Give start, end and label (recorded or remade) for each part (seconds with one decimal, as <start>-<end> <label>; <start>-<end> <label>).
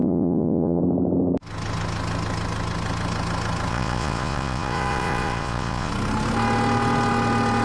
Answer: 0.0-0.8 remade; 0.8-3.7 recorded; 3.7-5.9 remade; 5.9-7.6 recorded